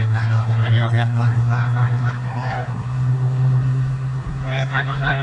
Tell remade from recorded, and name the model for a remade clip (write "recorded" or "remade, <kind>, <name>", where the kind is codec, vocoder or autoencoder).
remade, codec, SNAC